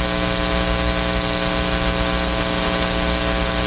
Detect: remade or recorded recorded